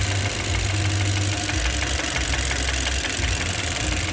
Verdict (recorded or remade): recorded